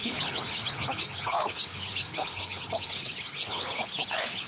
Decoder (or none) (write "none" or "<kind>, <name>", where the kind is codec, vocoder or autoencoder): codec, HILCodec